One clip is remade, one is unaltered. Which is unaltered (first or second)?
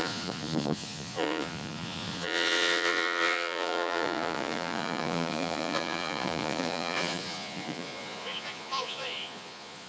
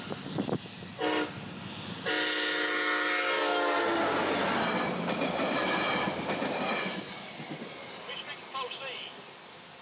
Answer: second